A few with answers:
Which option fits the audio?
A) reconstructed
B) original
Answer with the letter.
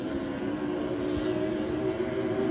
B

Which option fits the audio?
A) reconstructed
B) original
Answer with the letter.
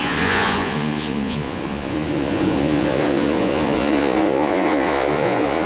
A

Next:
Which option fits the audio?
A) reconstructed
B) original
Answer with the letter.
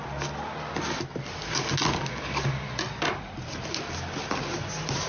B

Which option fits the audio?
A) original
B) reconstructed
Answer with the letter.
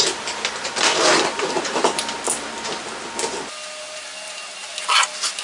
A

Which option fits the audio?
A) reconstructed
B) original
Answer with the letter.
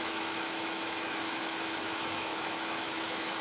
A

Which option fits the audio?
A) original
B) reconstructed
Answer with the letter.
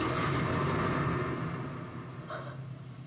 A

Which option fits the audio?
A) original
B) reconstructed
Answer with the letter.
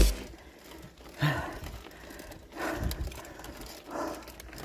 A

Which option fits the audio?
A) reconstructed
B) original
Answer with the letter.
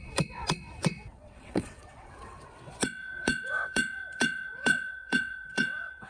A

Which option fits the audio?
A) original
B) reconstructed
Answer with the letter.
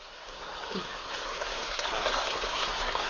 B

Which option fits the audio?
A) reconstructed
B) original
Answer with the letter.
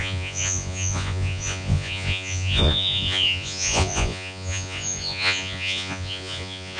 A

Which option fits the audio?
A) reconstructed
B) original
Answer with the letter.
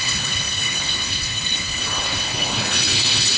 A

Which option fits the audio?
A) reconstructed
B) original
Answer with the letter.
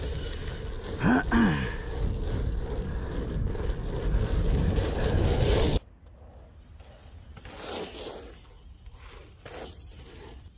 B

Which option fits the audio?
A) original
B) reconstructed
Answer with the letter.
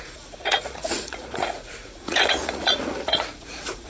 B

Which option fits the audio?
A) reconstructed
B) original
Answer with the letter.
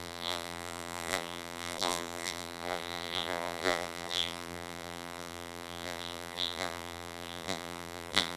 A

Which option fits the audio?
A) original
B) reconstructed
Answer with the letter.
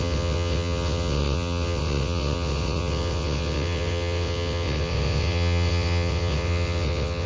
B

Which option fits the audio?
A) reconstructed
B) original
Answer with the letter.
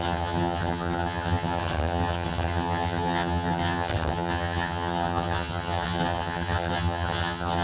A